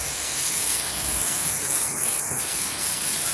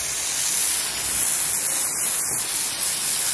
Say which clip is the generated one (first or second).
first